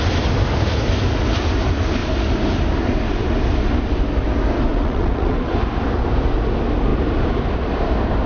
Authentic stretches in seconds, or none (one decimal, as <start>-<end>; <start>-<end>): 0.0-4.7; 5.5-8.3